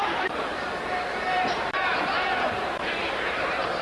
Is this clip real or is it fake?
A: fake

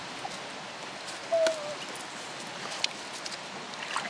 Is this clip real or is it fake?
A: real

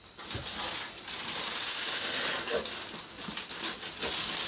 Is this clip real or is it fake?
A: real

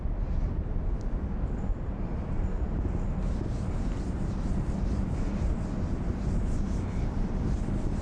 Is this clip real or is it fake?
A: real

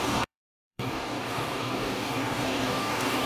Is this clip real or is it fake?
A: fake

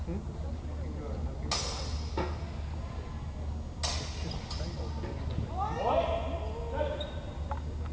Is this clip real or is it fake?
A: real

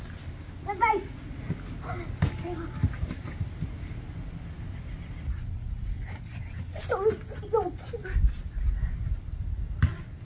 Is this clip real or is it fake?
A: real